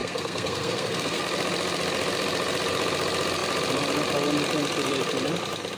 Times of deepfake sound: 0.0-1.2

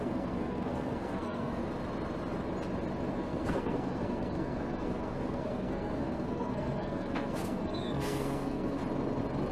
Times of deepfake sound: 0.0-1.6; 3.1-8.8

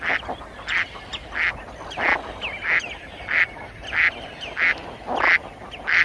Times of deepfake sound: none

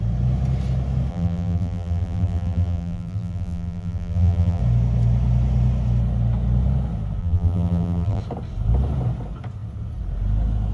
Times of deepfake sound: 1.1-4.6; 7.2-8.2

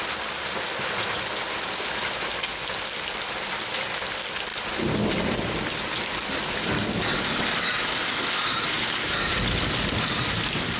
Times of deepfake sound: 2.5-3.6; 4.5-6.3